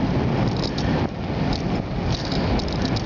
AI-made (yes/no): no